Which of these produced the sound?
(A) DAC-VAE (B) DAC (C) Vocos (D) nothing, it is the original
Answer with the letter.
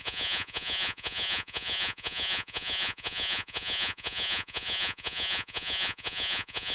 C